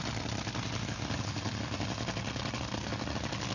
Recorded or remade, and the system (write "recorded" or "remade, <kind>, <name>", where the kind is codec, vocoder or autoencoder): recorded